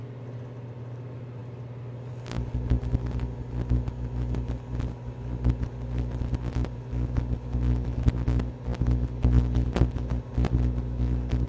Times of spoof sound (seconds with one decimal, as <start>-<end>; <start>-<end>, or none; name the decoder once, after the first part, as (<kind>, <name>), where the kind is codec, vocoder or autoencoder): none